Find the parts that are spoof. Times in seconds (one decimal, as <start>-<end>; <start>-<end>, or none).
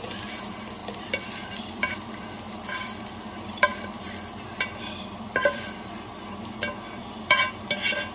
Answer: 0.8-5.7; 7.0-7.5